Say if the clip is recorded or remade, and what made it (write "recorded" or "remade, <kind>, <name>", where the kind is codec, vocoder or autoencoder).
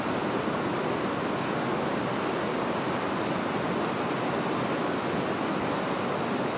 recorded